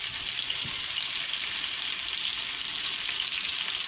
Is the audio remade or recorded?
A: recorded